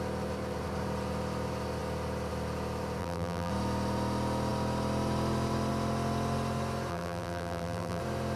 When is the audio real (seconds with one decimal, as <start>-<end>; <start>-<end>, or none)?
0.0-3.0; 3.5-6.9; 8.0-8.4